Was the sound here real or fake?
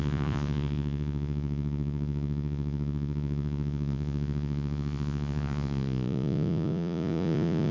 fake